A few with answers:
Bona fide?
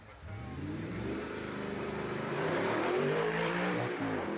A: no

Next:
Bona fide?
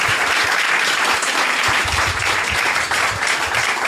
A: no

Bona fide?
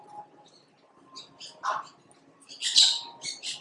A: yes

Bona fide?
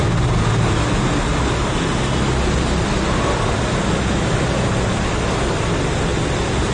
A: yes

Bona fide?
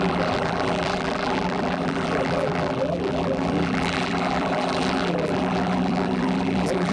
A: no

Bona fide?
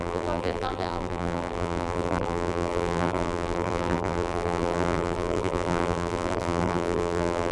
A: no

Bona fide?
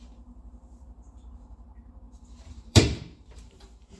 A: no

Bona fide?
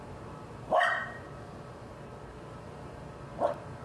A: no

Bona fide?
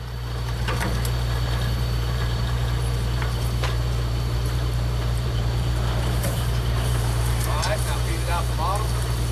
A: no